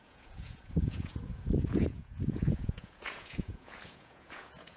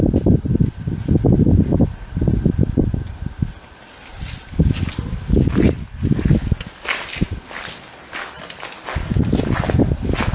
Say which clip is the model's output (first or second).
first